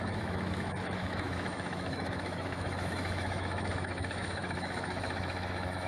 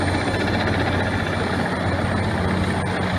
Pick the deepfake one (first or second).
first